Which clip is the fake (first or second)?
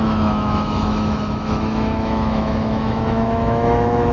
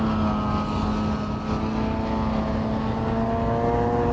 first